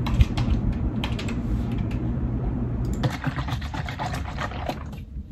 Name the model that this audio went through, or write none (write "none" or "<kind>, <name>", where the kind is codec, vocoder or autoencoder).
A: vocoder, BigVGAN v2